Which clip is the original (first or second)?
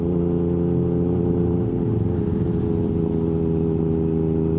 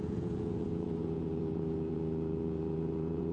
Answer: first